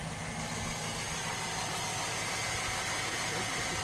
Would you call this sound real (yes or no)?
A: yes